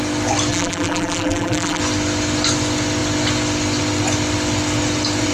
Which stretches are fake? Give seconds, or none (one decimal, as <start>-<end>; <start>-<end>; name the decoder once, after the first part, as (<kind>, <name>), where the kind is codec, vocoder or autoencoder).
0.5-1.8 (vocoder, BigVGAN v2)